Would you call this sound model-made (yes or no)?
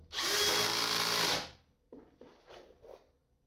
no